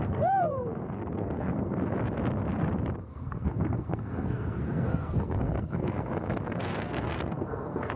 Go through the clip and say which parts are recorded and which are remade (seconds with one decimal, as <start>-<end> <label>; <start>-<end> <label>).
0.0-2.0 remade; 2.0-3.0 recorded; 3.0-8.0 remade